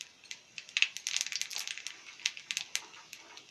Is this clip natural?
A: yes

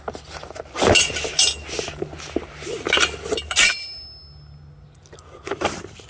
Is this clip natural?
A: yes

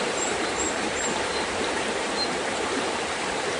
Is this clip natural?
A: no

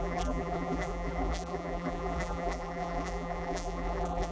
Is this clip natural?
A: no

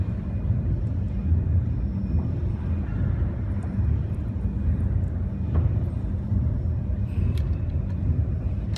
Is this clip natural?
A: no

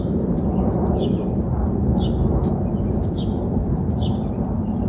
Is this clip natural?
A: no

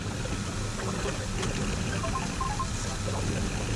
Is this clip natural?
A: yes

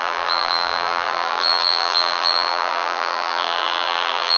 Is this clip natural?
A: no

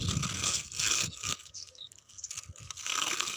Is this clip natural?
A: no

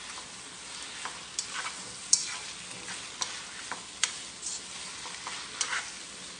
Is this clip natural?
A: yes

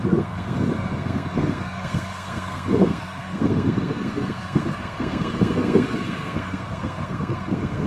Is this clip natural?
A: no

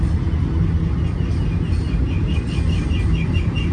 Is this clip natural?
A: yes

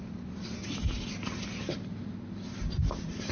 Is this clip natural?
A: yes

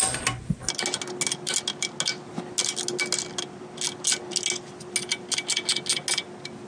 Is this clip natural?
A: yes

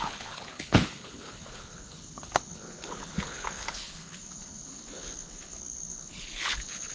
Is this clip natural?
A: no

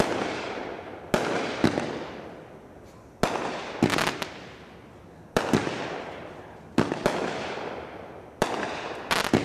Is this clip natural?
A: yes